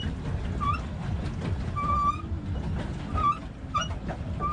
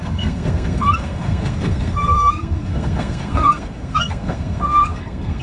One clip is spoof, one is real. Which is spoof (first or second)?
second